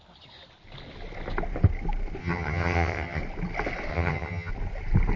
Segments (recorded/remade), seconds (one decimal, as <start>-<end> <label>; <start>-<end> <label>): 0.0-2.2 recorded; 2.2-3.2 remade; 3.2-3.9 recorded; 3.9-4.5 remade; 4.5-5.2 recorded